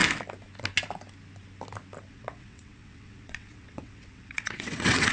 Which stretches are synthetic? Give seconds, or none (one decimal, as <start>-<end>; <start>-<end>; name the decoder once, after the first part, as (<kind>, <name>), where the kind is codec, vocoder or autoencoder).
2.1-5.1 (vocoder, WaveNeXt)